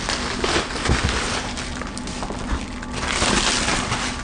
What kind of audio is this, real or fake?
real